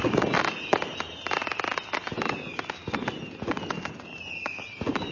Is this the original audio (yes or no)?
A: yes